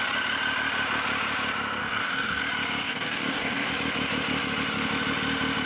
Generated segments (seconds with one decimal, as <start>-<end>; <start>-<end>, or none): 1.8-2.4; 2.8-3.7